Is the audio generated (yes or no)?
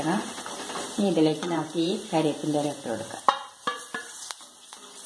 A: yes